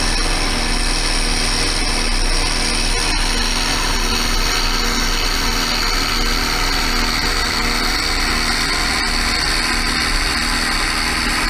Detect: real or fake real